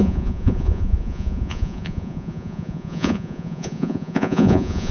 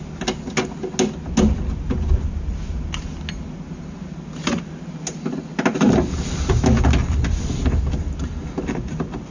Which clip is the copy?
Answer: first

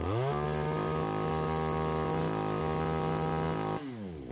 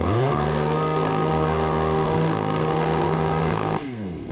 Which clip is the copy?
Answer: second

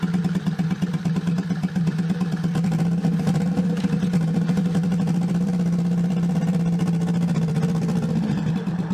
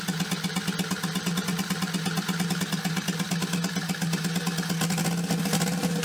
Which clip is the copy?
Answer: first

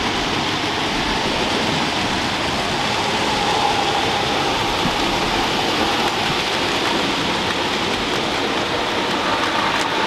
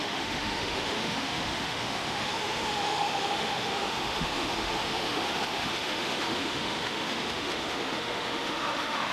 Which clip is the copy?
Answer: second